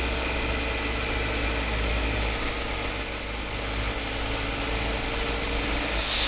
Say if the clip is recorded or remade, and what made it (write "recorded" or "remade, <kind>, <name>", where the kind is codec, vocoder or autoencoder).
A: recorded